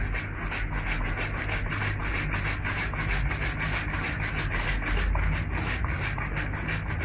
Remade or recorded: recorded